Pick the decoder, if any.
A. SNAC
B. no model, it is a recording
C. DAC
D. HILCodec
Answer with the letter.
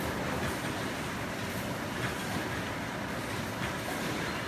B